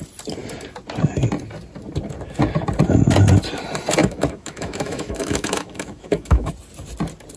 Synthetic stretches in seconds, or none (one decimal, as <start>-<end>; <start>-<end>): 4.0-6.5